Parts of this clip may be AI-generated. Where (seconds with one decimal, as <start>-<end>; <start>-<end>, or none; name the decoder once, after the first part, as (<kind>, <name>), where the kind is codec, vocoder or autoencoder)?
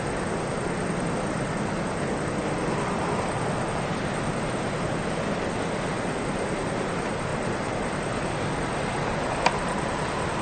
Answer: none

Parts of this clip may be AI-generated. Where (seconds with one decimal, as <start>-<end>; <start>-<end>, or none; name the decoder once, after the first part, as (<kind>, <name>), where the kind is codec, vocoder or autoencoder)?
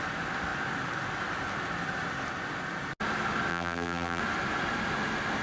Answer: 3.5-4.2 (vocoder, BigVGAN v2)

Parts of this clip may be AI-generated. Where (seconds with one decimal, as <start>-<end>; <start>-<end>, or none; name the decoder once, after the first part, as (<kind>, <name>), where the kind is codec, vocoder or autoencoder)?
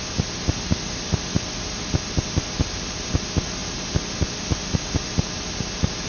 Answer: none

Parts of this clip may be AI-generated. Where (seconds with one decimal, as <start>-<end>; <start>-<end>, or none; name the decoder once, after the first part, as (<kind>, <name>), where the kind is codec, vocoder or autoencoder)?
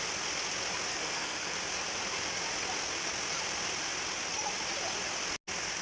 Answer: 0.9-1.5 (codec, SNAC)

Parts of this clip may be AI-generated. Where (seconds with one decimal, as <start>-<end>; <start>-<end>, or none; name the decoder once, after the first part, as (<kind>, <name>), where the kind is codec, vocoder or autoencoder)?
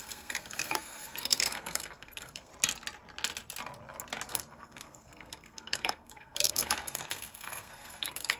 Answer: 0.0-2.5 (codec, SNAC); 4.3-8.4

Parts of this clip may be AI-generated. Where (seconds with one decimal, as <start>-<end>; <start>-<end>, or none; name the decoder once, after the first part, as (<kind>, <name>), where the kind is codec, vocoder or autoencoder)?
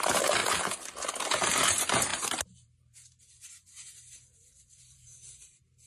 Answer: 0.0-0.4 (vocoder, BigVGAN v2); 1.3-5.9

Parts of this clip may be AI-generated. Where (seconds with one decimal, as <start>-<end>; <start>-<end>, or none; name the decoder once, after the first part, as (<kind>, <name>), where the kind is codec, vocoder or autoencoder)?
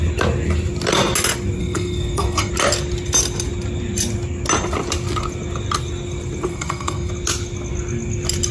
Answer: 1.6-2.5 (codec, SNAC); 6.5-7.1